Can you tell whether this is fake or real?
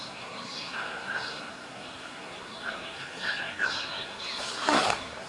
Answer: fake